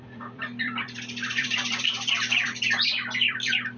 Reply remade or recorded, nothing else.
remade